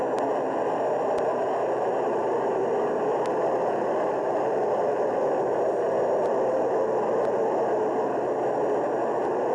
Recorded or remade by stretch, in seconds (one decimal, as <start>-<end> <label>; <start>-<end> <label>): 0.0-2.2 recorded; 2.2-6.5 remade; 6.5-9.5 recorded